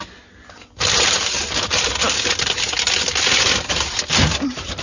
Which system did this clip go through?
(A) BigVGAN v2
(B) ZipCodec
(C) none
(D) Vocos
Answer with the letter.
C